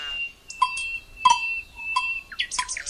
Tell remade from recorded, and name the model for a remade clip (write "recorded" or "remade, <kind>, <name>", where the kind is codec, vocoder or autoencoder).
recorded